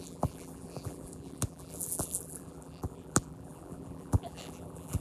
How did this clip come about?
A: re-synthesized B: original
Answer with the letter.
A